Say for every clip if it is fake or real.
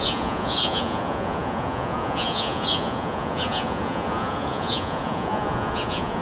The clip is fake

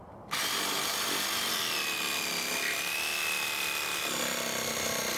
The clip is real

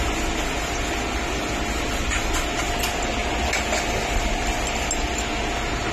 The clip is real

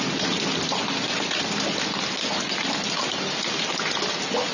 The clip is real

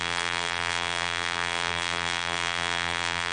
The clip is fake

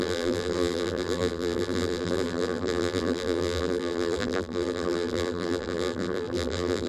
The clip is fake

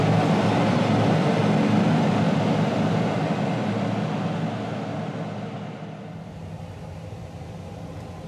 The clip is real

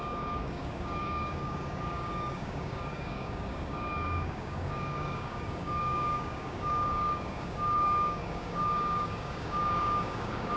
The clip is fake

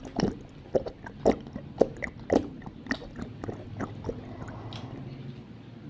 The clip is real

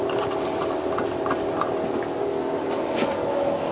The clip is fake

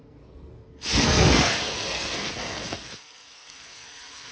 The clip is fake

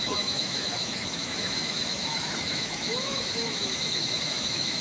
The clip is fake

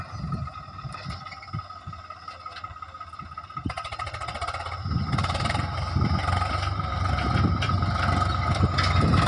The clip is real